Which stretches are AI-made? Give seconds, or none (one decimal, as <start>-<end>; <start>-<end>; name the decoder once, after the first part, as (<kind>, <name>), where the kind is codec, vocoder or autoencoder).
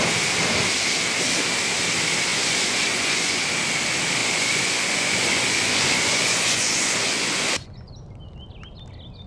2.3-3.4 (vocoder, Vocos); 4.2-7.9